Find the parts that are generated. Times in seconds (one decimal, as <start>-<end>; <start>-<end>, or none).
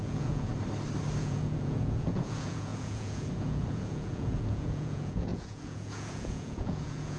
0.0-0.5; 1.2-7.2